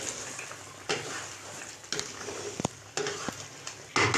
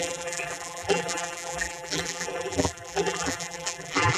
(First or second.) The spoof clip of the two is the second